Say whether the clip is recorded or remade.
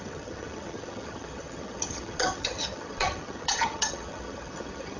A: remade